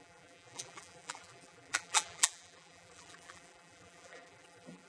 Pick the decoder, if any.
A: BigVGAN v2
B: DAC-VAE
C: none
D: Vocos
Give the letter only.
A